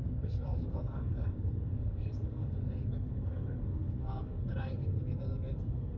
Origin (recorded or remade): remade